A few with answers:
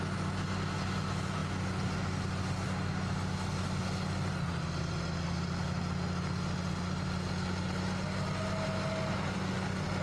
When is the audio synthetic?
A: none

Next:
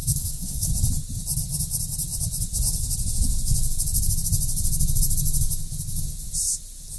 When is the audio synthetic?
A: 0.0-0.7 (codec, DAC)

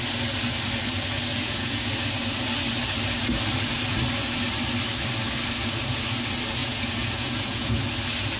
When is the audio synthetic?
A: 1.3-1.9 (vocoder, Vocos); 6.6-7.8

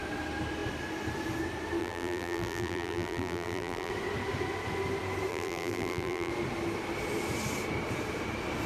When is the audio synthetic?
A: 1.8-3.9 (vocoder, BigVGAN v2); 5.3-6.3

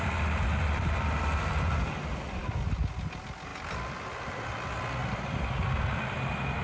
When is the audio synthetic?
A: none

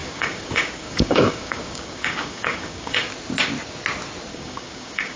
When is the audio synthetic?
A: 0.0-3.1 (codec, DAC); 4.3-5.2